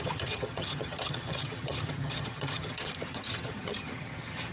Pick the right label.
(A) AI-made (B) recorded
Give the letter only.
A